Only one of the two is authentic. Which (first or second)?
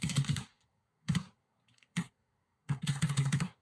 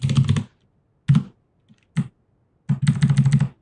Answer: second